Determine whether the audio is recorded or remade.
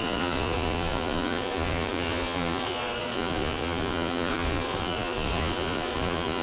remade